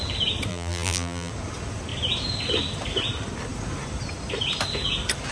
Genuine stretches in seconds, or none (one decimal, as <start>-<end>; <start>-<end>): 0.0-0.5; 1.3-5.3